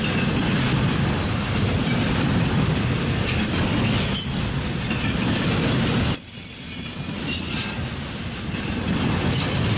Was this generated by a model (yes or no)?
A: no